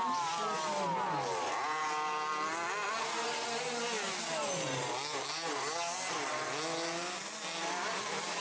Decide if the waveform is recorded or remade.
recorded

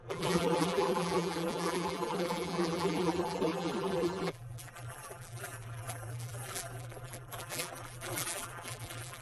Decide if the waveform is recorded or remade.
remade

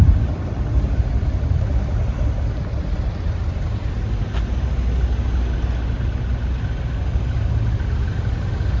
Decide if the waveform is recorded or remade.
recorded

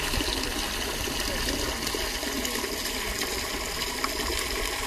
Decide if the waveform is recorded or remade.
recorded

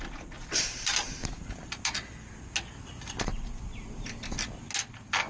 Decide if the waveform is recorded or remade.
recorded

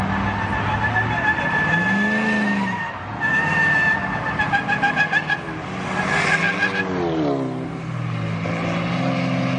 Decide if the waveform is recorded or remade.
recorded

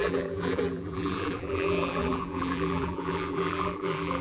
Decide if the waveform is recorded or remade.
remade